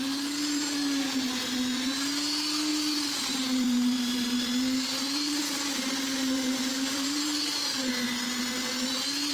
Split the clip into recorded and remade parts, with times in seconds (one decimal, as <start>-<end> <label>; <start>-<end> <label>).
0.0-2.7 recorded; 2.7-7.9 remade; 7.9-9.3 recorded